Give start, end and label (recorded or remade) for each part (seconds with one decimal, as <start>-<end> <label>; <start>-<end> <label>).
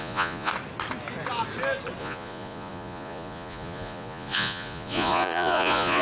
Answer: 0.0-0.5 remade; 0.5-2.0 recorded; 2.0-6.0 remade